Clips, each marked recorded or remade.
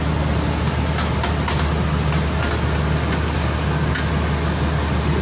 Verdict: recorded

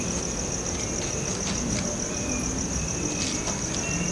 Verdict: recorded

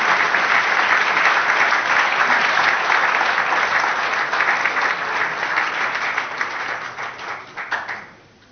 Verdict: recorded